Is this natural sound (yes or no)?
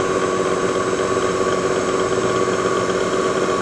yes